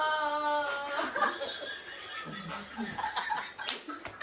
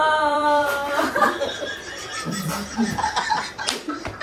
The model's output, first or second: second